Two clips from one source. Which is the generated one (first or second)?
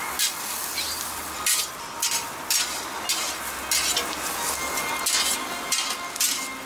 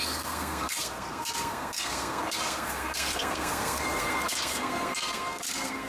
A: second